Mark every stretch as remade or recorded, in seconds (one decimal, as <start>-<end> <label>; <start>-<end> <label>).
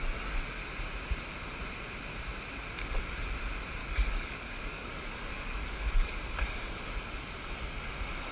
0.0-3.8 recorded; 3.8-6.1 remade; 6.1-8.3 recorded